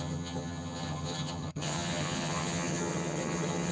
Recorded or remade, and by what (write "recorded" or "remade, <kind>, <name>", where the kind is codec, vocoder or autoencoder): remade, vocoder, HiFi-GAN